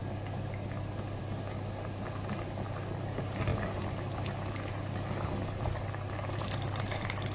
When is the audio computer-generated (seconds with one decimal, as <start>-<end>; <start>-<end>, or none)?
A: none